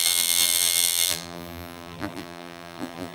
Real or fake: fake